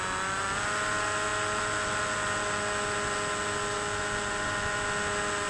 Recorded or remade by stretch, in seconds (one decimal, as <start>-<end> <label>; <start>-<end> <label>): 0.0-5.5 recorded